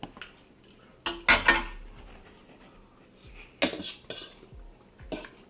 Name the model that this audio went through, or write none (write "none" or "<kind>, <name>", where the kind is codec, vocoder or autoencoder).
none